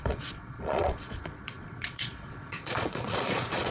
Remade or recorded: remade